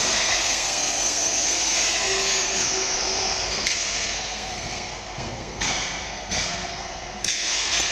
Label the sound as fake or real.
fake